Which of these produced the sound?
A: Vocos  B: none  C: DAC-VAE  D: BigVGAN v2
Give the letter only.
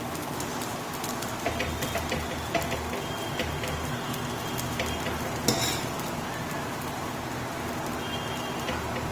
B